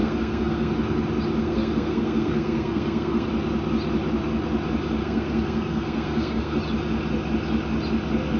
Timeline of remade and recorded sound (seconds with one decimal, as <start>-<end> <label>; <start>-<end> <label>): 0.0-0.7 remade; 0.7-1.4 recorded; 1.4-3.3 remade; 3.3-5.0 recorded; 5.0-6.6 remade; 6.6-8.4 recorded